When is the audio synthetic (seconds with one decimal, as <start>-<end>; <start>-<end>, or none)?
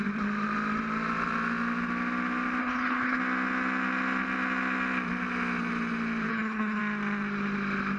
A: 2.6-3.2; 6.3-6.8